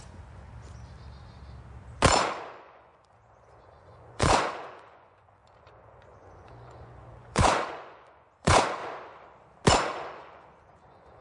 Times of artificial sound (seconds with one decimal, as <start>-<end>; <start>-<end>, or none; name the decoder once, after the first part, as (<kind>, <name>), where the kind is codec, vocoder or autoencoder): 0.0-0.5 (vocoder, Vocos); 2.5-8.8; 9.7-11.2

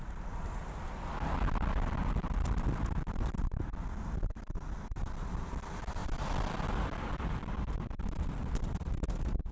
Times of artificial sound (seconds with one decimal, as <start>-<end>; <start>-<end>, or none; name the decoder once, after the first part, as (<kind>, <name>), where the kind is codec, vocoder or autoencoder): none